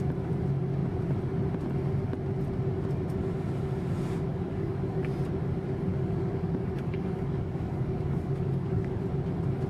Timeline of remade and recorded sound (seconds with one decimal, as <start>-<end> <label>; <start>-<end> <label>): 0.0-4.3 recorded; 4.3-5.0 remade; 5.0-5.9 recorded; 5.9-9.0 remade; 9.0-9.7 recorded